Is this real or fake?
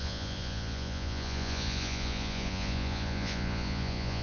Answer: fake